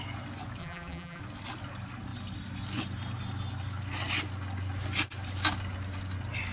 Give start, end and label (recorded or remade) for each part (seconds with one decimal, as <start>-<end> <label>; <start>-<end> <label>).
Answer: 0.0-0.6 recorded; 0.6-1.2 remade; 1.2-6.5 recorded